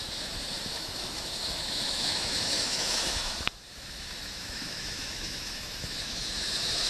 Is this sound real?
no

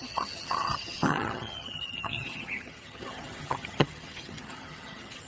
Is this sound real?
no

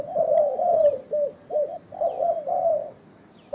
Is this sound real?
yes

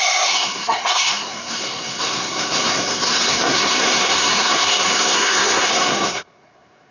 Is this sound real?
no